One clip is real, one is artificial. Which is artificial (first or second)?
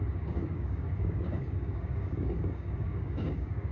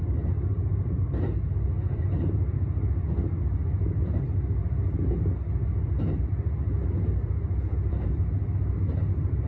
first